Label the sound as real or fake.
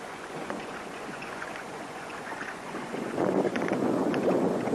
fake